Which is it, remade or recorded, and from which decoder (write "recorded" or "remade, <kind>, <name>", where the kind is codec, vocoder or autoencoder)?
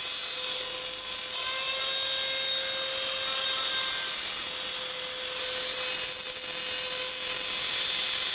recorded